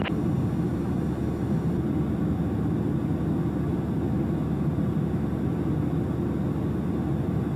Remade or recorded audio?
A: recorded